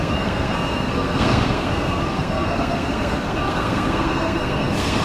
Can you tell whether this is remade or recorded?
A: remade